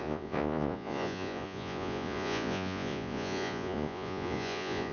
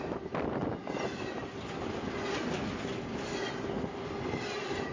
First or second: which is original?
second